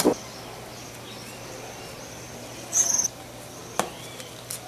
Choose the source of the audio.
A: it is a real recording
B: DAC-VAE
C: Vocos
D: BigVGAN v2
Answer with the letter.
A